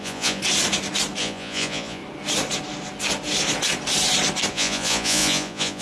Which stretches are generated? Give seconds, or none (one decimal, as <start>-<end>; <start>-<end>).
0.0-0.4; 1.2-2.0; 4.5-5.8